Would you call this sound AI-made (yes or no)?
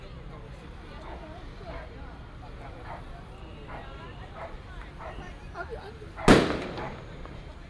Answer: no